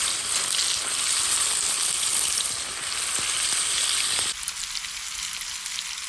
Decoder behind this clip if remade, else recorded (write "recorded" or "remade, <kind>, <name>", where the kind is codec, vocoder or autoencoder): recorded